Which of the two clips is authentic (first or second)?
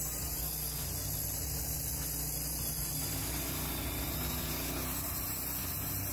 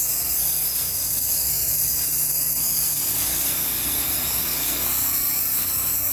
first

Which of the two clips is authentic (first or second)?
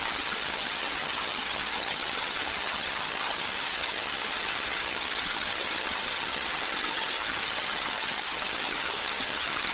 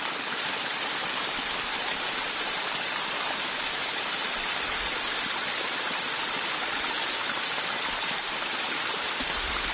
second